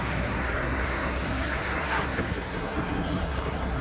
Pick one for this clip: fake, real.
fake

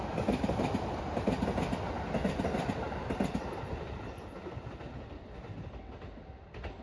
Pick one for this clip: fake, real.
real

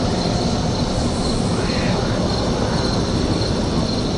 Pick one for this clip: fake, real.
real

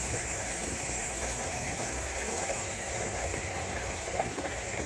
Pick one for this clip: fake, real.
fake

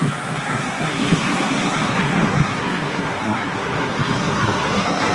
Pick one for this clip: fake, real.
fake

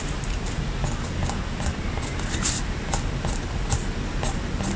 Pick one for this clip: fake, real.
real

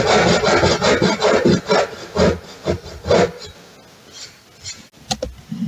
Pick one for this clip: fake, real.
real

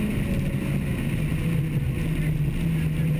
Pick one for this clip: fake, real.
real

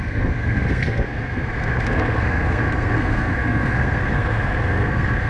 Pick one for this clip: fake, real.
fake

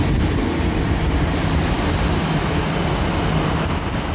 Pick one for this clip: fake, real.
real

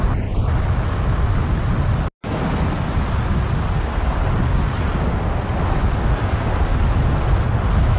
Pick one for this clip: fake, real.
real